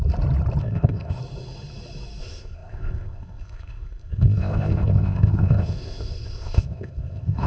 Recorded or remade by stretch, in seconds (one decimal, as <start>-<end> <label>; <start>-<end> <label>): 0.0-0.6 recorded; 0.6-1.2 remade; 1.2-2.2 recorded; 2.2-7.5 remade